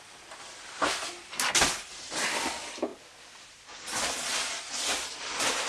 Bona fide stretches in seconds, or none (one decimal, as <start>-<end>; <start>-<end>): 0.0-5.7